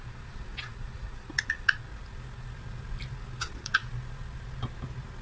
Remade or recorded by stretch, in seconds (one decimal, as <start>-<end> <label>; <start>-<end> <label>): 0.0-1.9 remade; 1.9-3.4 recorded; 3.4-3.8 remade; 3.8-5.2 recorded